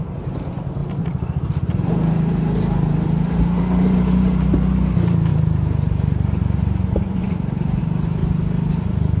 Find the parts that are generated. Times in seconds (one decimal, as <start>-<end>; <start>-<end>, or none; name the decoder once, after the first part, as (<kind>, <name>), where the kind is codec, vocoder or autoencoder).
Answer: 0.0-8.2 (vocoder, BigVGAN v2)